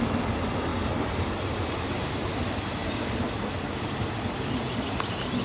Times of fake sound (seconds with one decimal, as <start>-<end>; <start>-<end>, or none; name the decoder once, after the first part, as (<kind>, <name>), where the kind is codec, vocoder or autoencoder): none